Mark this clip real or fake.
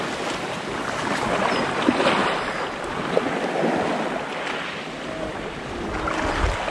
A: real